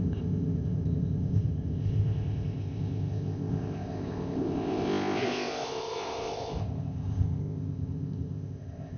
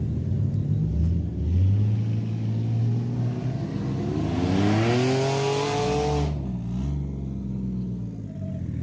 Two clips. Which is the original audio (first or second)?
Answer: second